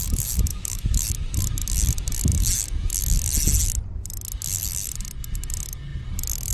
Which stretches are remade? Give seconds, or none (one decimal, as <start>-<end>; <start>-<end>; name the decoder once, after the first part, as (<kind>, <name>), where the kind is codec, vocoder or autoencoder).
0.5-1.1 (autoencoder, DAC-VAE)